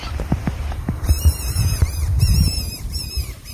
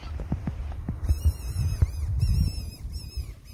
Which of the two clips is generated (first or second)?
first